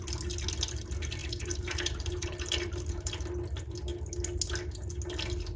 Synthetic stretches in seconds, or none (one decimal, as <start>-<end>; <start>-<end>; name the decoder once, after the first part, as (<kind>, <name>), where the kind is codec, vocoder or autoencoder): 1.2-3.2 (vocoder, BigVGAN v2)